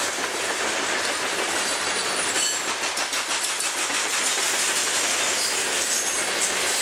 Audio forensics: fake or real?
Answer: real